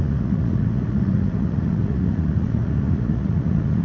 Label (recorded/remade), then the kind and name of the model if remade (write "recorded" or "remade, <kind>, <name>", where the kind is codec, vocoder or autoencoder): remade, vocoder, Vocos